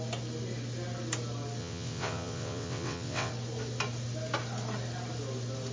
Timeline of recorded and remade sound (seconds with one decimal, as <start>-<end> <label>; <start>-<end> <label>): 0.0-1.6 recorded; 1.6-3.3 remade; 3.3-5.7 recorded